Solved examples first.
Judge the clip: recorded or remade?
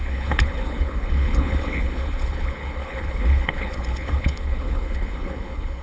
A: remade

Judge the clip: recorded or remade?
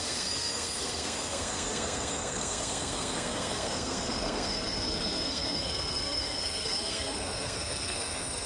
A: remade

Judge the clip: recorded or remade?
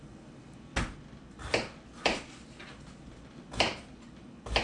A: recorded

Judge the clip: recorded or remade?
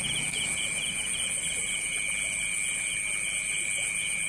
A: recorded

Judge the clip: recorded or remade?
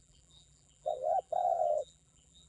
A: remade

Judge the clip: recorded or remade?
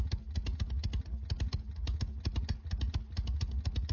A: recorded